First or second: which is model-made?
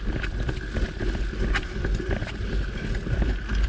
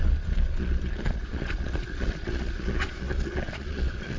second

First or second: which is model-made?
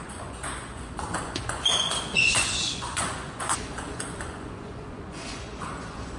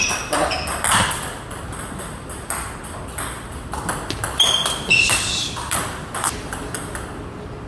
first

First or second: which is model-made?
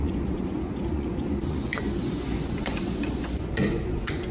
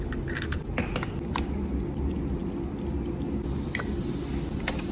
first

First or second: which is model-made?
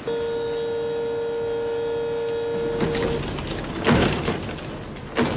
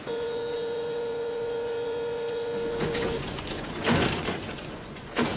second